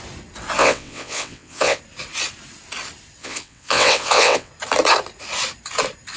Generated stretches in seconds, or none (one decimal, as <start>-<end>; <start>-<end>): 0.6-1.8; 3.2-4.5